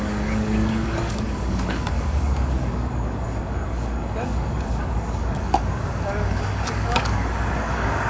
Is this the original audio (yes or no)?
no